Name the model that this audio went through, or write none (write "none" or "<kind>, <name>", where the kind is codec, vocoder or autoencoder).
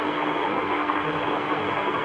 codec, SNAC